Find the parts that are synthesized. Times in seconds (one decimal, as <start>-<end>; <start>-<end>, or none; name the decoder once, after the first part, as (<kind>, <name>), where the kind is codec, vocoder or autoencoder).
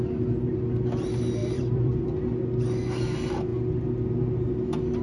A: 1.4-2.0 (vocoder, BigVGAN v2)